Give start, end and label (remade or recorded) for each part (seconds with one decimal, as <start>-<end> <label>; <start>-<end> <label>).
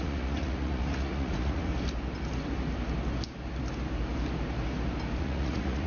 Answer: 0.0-1.7 remade; 1.7-5.2 recorded; 5.2-5.9 remade